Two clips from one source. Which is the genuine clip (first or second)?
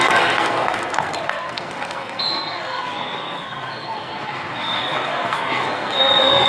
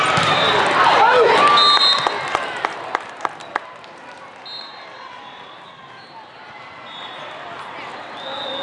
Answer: second